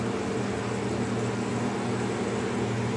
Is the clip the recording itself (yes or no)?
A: yes